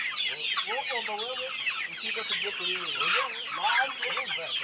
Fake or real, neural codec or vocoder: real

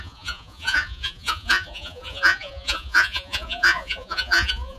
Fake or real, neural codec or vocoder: fake, vocoder, Vocos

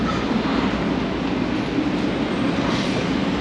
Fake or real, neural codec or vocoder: real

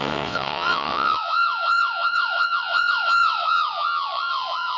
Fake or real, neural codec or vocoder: fake, vocoder, WaveNeXt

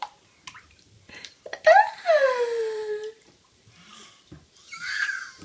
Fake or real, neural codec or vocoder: fake, vocoder, BigVGAN v2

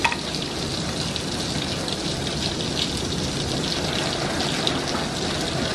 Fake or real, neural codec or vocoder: real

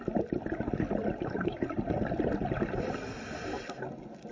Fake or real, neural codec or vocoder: real